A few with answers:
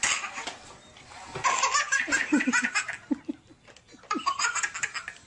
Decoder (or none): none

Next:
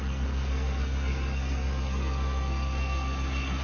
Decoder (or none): codec, SNAC